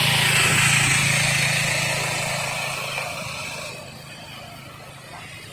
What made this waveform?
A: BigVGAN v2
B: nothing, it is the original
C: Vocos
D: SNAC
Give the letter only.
B